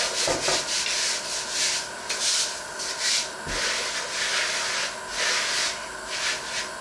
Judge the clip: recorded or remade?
recorded